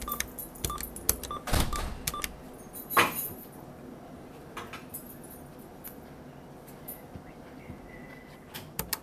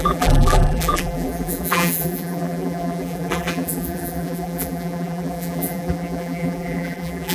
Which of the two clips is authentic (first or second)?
first